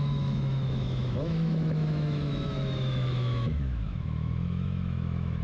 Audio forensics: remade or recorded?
remade